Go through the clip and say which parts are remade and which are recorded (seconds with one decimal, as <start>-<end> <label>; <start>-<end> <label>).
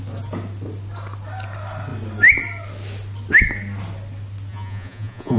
0.0-4.5 recorded; 4.5-5.4 remade